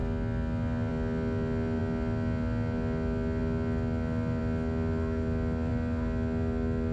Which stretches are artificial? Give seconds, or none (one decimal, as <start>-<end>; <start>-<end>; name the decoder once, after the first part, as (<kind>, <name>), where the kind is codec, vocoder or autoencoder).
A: none